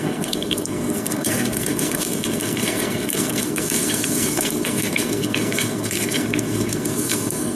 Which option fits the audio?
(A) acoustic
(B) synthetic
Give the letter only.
B